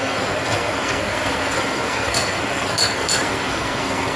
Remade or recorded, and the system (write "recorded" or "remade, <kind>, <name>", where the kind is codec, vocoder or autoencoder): remade, codec, SNAC